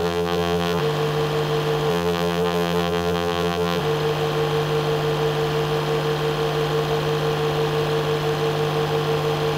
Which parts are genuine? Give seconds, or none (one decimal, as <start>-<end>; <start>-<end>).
0.8-1.9; 3.8-9.6